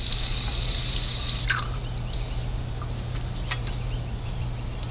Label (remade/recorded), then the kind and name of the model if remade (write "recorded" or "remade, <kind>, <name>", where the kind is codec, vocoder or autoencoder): recorded